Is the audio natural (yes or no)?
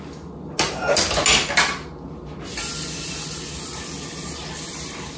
yes